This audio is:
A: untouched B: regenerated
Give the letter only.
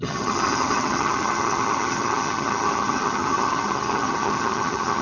B